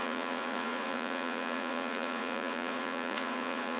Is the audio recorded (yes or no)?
no